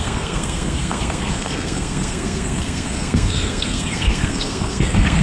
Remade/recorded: remade